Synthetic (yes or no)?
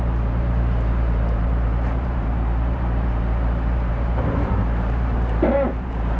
yes